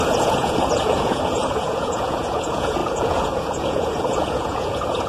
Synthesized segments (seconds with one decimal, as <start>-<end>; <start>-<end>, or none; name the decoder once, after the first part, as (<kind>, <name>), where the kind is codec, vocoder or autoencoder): 0.0-5.1 (vocoder, Vocos)